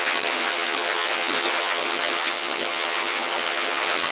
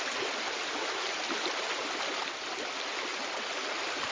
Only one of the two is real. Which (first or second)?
second